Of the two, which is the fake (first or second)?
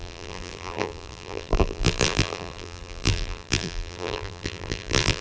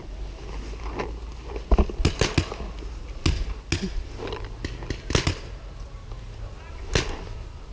first